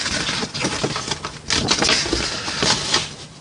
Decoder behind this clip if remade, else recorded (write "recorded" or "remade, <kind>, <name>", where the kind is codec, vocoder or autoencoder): recorded